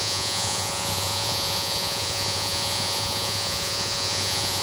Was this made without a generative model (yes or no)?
no